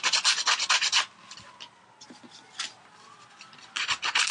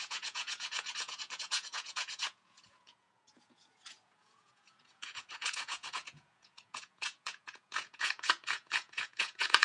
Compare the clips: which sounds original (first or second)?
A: first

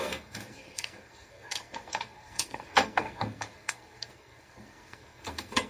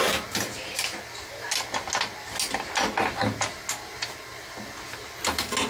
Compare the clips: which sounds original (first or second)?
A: second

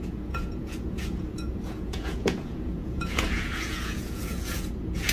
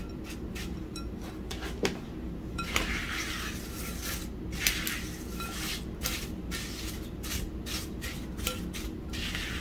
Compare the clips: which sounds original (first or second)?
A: second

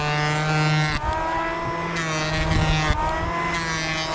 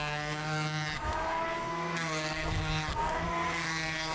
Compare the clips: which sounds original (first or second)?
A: first